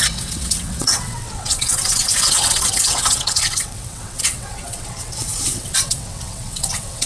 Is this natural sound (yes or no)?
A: no